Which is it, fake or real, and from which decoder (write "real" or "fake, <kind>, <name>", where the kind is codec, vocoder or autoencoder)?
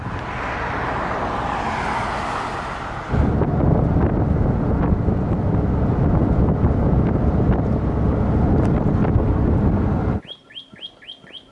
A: real